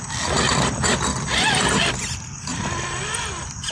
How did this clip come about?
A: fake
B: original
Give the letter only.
B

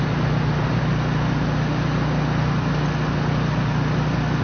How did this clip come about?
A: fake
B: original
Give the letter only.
B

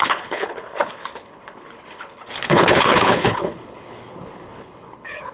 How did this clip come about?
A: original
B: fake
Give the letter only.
B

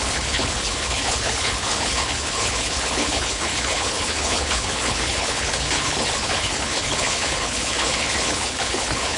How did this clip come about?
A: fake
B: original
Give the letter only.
A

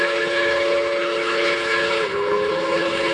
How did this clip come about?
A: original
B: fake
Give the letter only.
B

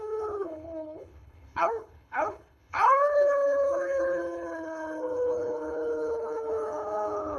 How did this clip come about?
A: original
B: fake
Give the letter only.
B